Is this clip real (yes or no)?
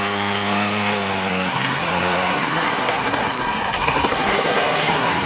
no